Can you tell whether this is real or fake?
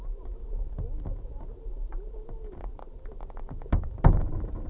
real